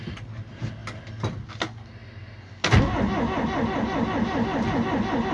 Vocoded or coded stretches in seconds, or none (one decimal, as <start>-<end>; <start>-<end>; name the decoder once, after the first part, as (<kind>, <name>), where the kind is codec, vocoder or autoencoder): none